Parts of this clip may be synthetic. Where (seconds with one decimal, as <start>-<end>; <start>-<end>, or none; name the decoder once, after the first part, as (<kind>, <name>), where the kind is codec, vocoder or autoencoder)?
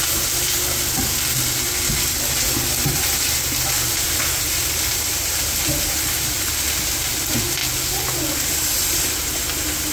4.6-6.8 (vocoder, BigVGAN v2)